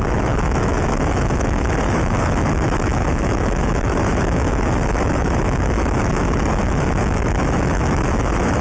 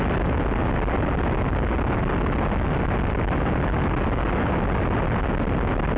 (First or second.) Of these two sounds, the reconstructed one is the first